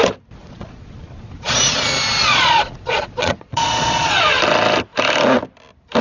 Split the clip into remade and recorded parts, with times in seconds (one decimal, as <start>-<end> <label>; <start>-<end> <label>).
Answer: 0.0-0.4 recorded; 0.4-1.6 remade; 1.6-2.2 recorded; 2.2-4.2 remade; 4.2-6.0 recorded